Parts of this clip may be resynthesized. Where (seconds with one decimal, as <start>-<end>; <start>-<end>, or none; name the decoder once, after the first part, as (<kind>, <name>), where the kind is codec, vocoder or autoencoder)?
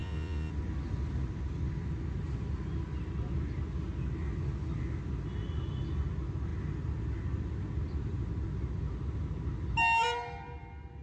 0.0-0.5 (vocoder, Vocos)